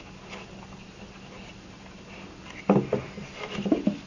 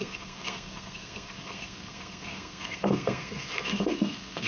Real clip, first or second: first